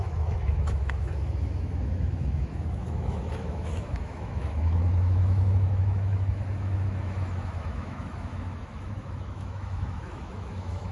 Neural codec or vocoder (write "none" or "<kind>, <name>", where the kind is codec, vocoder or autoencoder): autoencoder, DAC-VAE